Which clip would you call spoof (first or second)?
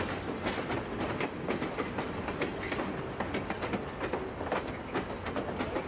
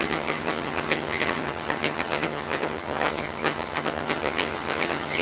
second